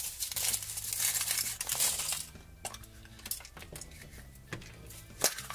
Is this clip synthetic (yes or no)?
no